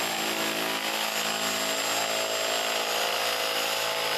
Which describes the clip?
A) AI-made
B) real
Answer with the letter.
B